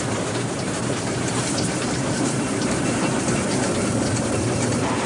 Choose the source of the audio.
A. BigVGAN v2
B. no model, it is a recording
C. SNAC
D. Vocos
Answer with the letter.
A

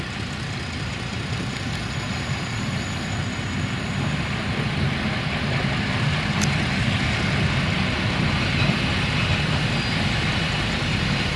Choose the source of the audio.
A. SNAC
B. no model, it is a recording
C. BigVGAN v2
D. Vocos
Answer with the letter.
B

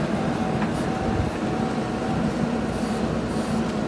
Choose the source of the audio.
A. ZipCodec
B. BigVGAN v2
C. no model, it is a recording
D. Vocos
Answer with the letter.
C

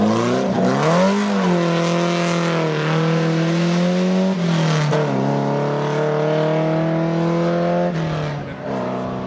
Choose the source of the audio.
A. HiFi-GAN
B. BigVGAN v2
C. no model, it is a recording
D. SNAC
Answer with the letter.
C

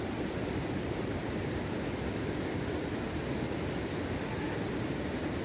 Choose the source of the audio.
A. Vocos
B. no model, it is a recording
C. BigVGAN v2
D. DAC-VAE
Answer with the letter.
B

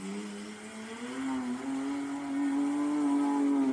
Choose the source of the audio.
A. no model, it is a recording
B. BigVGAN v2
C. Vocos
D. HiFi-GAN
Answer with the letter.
A